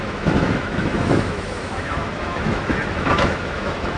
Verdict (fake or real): fake